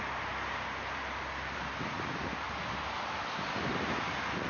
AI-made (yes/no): no